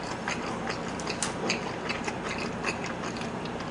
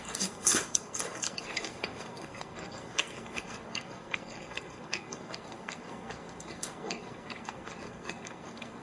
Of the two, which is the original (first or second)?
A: first